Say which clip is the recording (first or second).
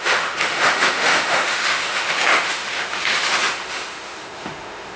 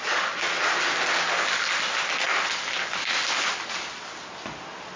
second